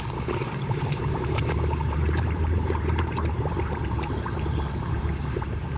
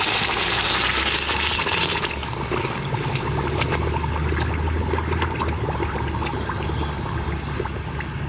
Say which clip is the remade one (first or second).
first